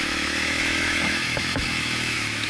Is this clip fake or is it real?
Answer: fake